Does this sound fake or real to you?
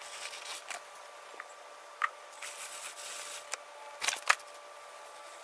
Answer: real